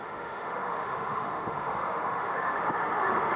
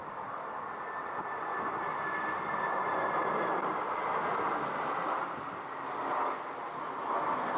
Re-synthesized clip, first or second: first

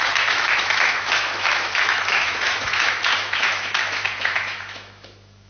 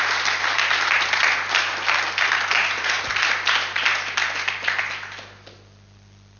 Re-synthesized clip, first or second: first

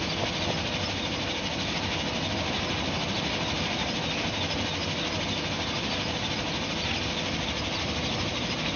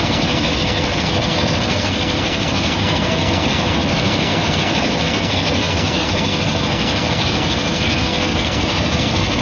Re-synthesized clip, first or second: second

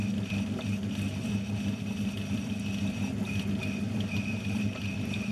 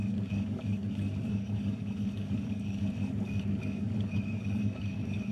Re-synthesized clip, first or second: second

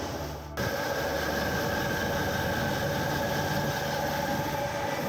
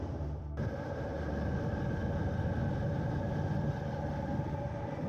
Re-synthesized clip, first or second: second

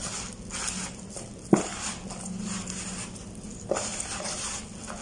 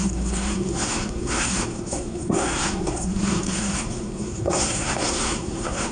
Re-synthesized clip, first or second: second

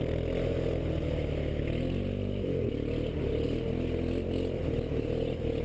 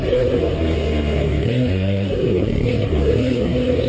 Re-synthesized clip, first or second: second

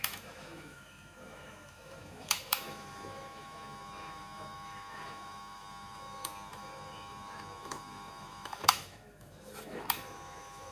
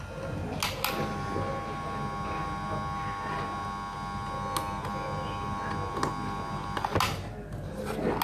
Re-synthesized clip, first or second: first